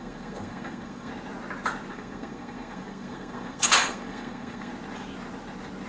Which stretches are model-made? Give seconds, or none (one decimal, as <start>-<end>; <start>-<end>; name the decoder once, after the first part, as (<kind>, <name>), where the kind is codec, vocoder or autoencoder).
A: 0.0-1.1 (codec, SNAC); 1.9-4.7